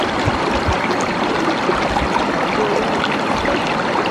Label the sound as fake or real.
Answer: real